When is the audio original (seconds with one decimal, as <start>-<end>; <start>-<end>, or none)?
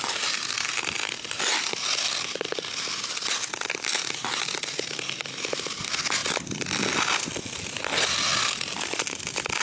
0.0-9.6